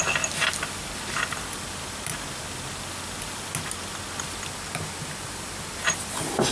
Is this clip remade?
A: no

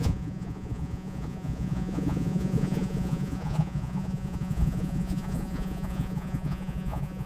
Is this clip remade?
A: yes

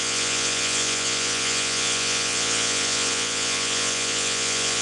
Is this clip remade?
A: yes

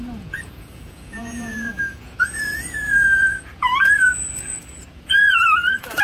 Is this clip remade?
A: yes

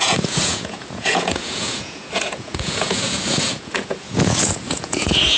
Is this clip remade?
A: yes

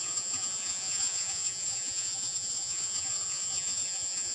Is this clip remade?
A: yes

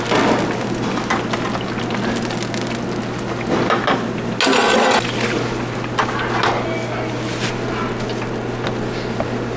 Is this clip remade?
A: no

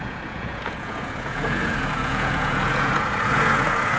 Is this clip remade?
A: yes